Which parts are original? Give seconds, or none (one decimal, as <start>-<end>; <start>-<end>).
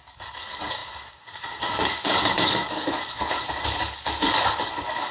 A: none